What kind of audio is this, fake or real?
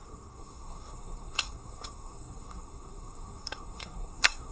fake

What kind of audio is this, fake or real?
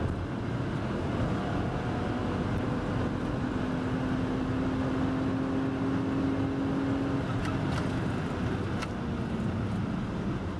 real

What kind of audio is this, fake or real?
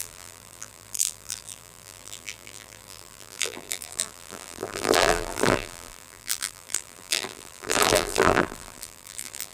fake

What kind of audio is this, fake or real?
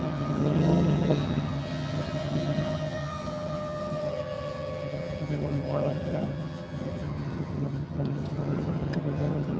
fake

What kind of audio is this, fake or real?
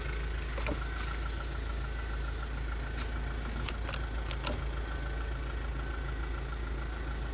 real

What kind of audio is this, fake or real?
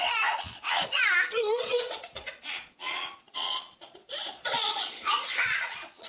fake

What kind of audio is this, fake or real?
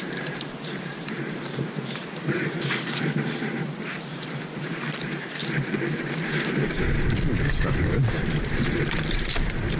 fake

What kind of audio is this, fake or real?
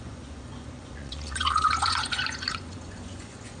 fake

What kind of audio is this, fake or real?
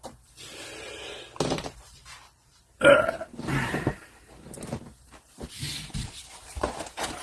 fake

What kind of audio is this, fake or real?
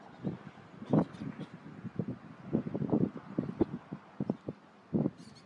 real